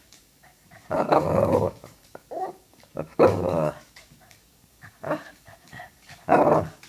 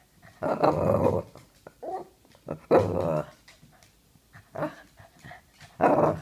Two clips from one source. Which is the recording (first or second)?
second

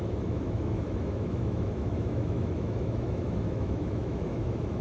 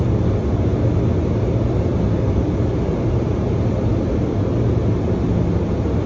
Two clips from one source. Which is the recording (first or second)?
second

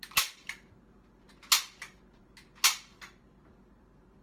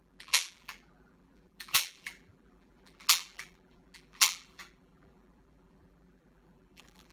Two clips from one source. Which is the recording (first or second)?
first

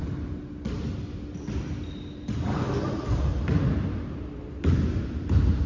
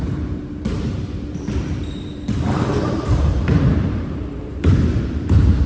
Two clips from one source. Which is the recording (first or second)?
first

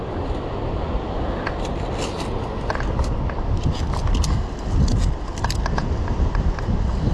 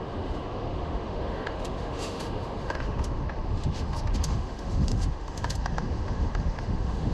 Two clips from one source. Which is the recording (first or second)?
first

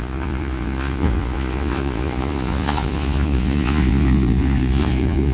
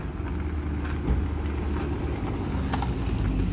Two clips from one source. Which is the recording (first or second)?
second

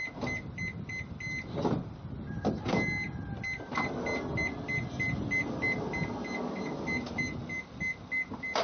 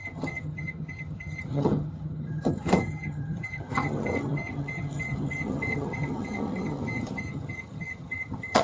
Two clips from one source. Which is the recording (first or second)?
first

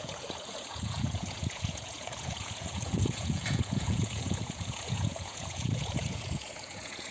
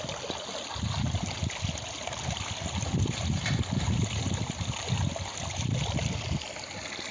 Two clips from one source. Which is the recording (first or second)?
second